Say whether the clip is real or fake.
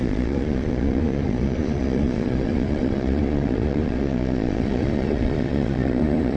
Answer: fake